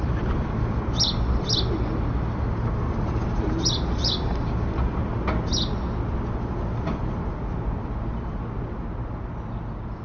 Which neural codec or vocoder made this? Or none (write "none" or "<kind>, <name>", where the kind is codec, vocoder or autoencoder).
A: none